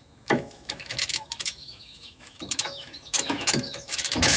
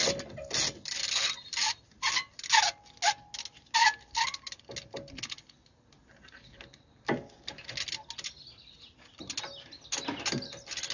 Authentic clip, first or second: second